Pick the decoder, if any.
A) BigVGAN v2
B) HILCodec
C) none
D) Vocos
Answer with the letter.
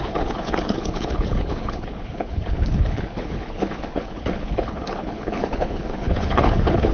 B